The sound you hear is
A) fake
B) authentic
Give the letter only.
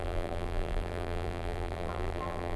A